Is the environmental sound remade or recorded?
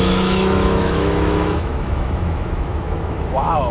remade